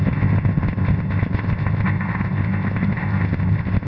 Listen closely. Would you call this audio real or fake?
fake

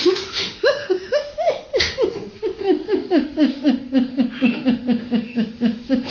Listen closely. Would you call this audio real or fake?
fake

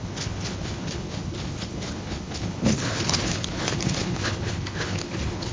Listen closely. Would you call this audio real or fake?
fake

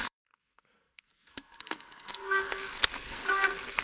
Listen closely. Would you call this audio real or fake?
fake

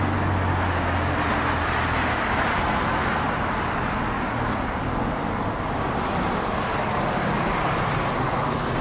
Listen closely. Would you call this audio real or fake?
real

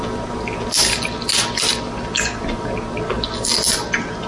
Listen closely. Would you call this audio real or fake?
real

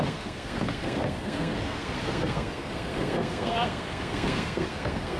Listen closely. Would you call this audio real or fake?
fake